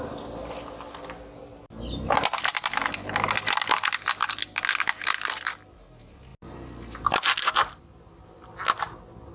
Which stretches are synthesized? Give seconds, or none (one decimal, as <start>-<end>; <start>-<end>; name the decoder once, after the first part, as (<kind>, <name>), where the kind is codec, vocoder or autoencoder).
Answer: none